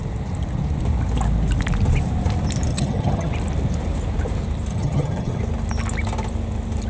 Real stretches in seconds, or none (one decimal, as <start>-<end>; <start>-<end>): 0.0-2.7; 3.3-4.7; 5.4-6.9